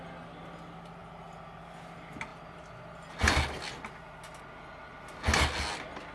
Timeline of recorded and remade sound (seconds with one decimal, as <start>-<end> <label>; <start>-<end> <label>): 0.0-6.1 recorded